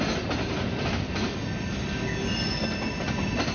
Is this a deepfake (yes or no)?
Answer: no